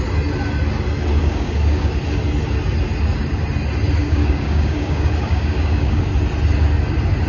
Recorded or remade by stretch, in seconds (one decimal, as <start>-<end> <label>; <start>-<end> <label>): 0.0-1.2 recorded; 1.2-1.9 remade; 1.9-4.0 recorded; 4.0-6.0 remade; 6.0-7.3 recorded